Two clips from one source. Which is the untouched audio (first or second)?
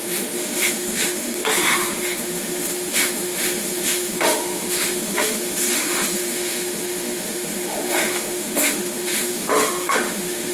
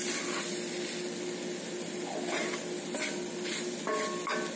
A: second